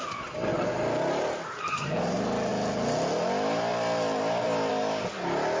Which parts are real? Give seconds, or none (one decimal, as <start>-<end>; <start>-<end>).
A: 0.0-5.6